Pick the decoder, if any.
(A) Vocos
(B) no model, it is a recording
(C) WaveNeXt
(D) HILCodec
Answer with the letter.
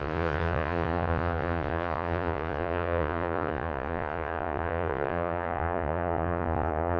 A